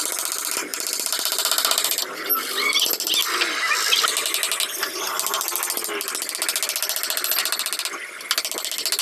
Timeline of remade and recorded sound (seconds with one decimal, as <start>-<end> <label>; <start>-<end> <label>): 0.0-0.7 recorded; 0.7-2.3 remade; 2.3-9.0 recorded